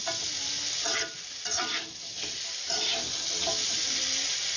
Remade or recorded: recorded